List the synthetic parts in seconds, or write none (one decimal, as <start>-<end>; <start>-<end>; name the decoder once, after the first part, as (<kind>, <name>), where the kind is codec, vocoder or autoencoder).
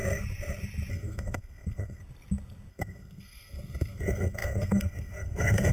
0.9-2.0 (codec, SNAC); 2.7-5.7